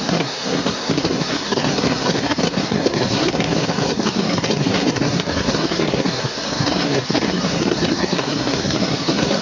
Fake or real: fake